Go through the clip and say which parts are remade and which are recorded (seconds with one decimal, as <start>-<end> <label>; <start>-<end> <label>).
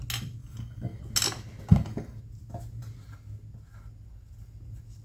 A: 0.0-0.4 recorded; 0.4-1.0 remade; 1.0-1.7 recorded; 1.7-2.2 remade; 2.2-5.0 recorded